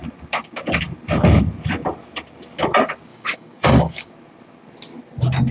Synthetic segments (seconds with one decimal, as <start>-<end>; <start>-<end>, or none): 3.1-4.1